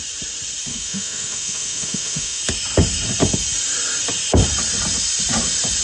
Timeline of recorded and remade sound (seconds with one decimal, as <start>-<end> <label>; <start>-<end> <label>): 0.0-0.7 recorded; 0.7-2.4 remade; 2.4-5.8 recorded